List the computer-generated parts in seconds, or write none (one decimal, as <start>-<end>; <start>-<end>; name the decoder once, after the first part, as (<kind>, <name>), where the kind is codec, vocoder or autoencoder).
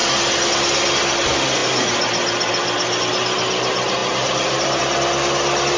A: 4.0-4.8 (vocoder, BigVGAN v2)